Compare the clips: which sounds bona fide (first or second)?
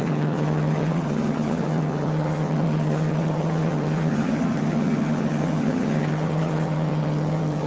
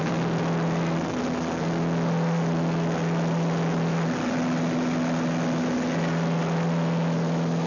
second